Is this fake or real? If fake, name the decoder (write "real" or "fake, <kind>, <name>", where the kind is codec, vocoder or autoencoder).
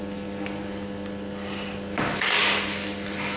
real